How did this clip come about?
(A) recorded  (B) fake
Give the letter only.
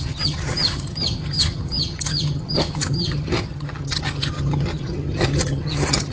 B